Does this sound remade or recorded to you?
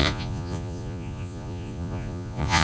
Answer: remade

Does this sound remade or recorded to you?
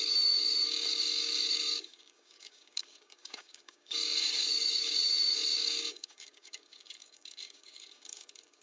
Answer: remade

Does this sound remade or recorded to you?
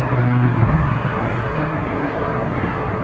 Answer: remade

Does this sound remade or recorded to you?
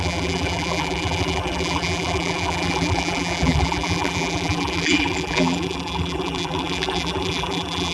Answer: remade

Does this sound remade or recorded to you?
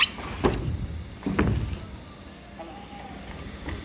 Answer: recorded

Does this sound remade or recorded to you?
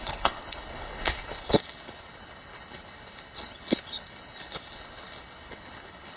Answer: remade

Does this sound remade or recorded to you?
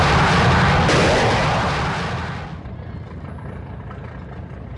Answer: recorded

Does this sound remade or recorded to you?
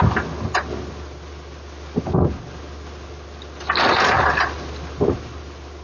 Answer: recorded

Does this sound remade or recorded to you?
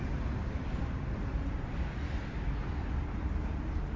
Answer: recorded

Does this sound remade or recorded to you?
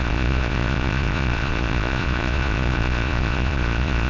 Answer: remade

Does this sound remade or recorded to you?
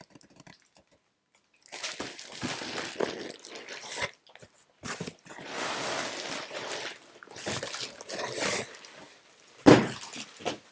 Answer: recorded